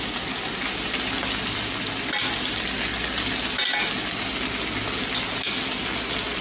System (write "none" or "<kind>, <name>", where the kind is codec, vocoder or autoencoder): none